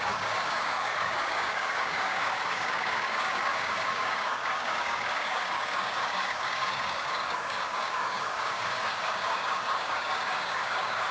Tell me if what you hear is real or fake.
fake